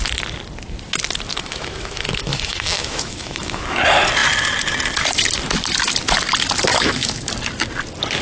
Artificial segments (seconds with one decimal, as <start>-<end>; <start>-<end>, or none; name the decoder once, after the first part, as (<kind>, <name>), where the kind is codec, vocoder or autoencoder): 1.3-3.8 (autoencoder, DAC-VAE); 6.7-7.3

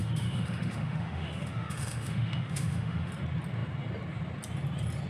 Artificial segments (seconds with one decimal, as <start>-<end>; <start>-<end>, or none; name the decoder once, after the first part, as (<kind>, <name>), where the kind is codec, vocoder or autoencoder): 0.0-3.1 (autoencoder, DAC-VAE)

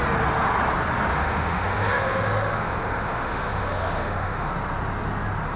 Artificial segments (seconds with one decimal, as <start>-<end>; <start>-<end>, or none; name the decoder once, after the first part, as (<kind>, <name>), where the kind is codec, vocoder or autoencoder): 1.1-4.5 (autoencoder, DAC-VAE)